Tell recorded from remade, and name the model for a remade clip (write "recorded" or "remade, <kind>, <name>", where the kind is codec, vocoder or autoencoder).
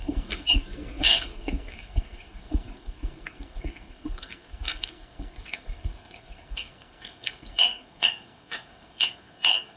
remade, codec, SNAC